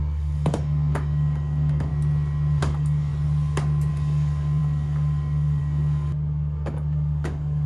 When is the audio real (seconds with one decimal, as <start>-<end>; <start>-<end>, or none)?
1.9-2.6; 3.1-3.9